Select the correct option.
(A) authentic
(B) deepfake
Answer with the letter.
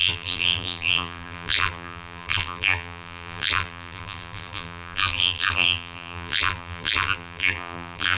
B